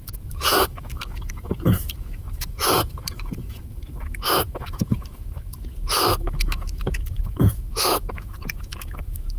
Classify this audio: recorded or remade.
remade